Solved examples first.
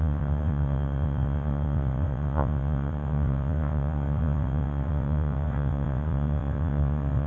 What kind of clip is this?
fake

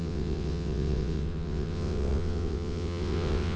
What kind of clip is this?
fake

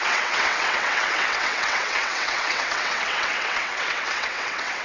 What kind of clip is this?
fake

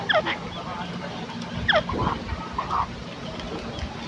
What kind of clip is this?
real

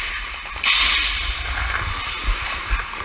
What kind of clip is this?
real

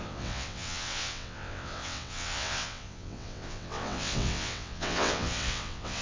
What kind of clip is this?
fake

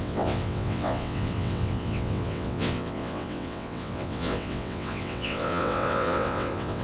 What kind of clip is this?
fake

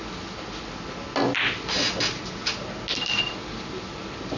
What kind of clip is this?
real